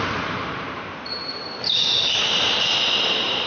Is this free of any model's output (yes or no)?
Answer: no